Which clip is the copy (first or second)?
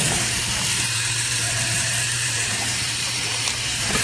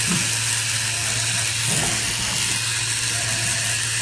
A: first